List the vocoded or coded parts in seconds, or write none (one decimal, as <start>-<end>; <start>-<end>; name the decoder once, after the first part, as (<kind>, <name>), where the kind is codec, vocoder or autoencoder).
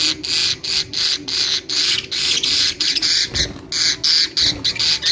0.4-3.4 (vocoder, BigVGAN v2)